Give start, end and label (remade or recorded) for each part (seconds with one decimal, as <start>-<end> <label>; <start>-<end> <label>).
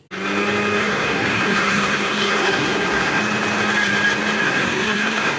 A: 0.0-0.8 recorded; 0.8-3.2 remade; 3.2-4.4 recorded; 4.4-5.4 remade